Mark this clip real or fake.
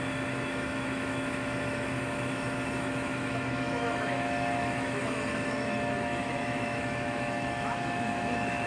fake